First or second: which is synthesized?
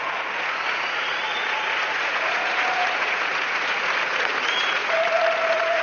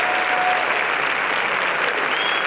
first